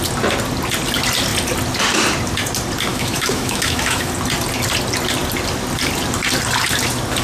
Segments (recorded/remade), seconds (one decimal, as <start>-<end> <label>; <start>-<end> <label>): 0.0-2.9 recorded; 2.9-4.1 remade; 4.1-7.2 recorded